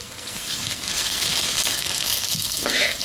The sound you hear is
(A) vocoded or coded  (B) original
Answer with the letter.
A